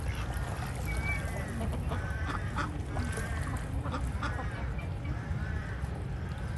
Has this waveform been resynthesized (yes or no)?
no